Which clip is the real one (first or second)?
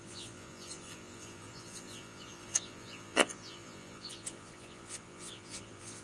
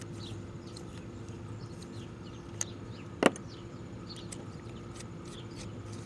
second